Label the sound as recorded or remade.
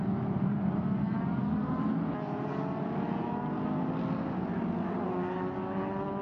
recorded